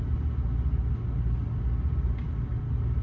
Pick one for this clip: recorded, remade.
recorded